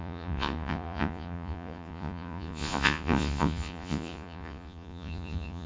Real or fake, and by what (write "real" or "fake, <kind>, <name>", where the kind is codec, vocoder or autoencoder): fake, vocoder, Vocos